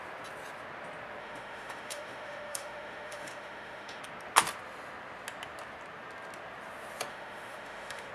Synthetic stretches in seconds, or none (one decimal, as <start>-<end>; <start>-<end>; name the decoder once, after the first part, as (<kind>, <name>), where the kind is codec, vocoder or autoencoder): 1.2-4.0 (autoencoder, DAC-VAE); 7.1-8.1